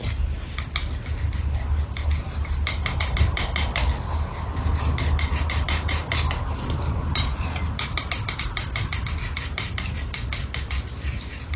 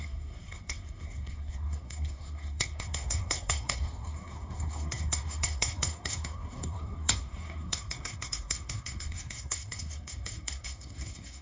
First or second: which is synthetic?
second